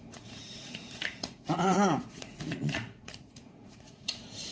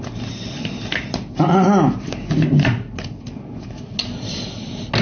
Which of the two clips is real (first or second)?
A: second